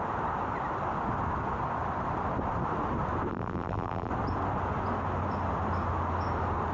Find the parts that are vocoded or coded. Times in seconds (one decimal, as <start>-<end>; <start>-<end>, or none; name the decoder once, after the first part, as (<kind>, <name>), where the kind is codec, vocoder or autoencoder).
3.3-4.1 (vocoder, BigVGAN v2)